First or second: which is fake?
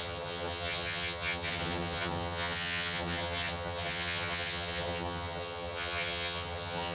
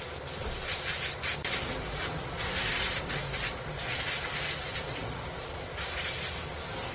first